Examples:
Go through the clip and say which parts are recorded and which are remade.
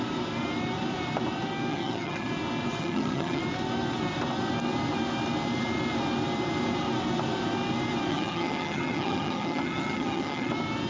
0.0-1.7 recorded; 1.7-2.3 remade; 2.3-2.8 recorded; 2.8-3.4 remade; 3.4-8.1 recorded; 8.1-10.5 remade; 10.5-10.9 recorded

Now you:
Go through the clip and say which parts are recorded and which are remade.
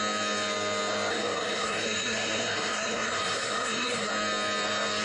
0.0-1.1 recorded; 1.1-4.1 remade; 4.1-5.0 recorded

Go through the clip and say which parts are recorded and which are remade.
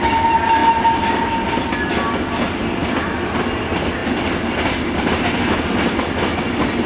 0.0-6.9 recorded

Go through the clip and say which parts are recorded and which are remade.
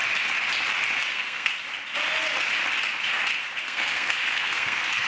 0.0-1.1 recorded; 1.1-1.5 remade; 1.5-3.6 recorded; 3.6-5.1 remade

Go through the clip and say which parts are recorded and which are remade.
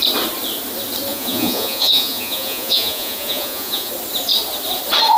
0.0-1.1 recorded; 1.1-3.9 remade; 3.9-5.2 recorded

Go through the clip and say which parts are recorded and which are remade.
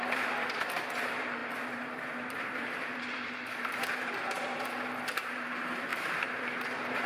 0.0-7.1 remade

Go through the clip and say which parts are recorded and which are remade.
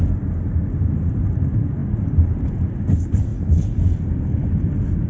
0.0-5.1 recorded